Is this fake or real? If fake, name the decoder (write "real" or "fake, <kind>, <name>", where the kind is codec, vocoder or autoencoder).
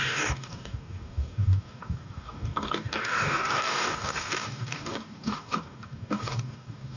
fake, codec, DAC